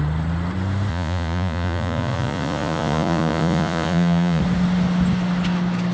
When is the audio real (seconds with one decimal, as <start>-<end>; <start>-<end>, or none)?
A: 0.0-0.9; 4.4-5.9